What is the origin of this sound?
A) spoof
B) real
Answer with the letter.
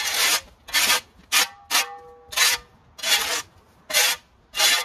B